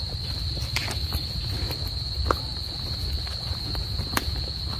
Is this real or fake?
real